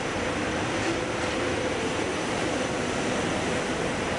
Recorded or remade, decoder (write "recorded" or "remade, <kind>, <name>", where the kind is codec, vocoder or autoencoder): recorded